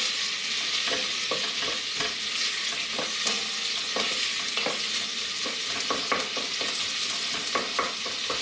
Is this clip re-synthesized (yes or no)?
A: no